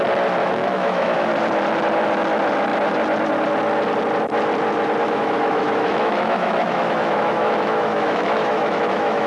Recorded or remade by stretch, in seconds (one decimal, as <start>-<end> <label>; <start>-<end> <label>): 0.0-0.4 recorded; 0.4-1.3 remade; 1.3-5.0 recorded; 5.0-9.3 remade